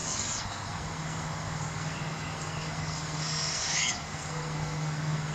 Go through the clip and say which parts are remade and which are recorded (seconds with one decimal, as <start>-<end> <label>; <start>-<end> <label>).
0.0-5.3 remade